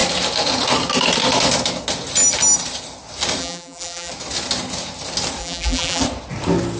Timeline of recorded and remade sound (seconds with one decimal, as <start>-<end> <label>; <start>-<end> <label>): 0.0-3.4 recorded; 3.4-4.1 remade; 4.1-5.4 recorded; 5.4-6.0 remade; 6.0-6.8 recorded